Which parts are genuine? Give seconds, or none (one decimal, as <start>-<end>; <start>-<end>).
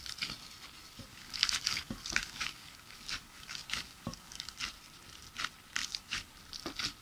0.0-1.1; 4.6-5.8; 6.3-7.0